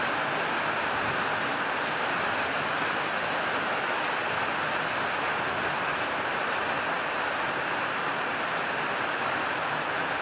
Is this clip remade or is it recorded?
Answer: recorded